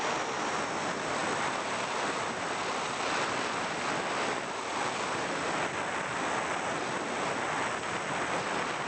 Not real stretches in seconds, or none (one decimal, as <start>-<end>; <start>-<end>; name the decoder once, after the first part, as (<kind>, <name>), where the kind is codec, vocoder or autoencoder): none